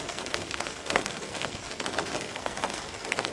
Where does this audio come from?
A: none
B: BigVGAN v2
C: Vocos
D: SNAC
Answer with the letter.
D